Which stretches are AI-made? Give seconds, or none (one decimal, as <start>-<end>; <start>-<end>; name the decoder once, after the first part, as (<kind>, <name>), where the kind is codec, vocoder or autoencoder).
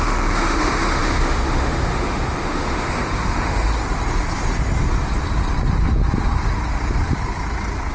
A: 0.0-3.7 (autoencoder, DAC-VAE)